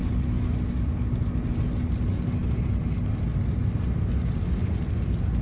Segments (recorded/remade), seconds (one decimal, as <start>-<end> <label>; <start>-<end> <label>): 0.0-5.4 recorded